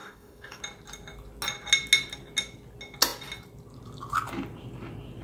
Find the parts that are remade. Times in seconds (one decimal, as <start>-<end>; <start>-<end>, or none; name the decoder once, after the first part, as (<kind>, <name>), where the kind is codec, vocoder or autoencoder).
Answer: 0.0-0.6 (codec, DAC)